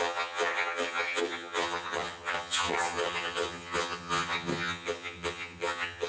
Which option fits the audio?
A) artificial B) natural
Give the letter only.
A